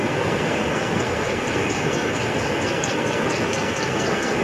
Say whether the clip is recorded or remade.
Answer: remade